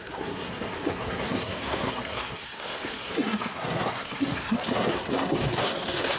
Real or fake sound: fake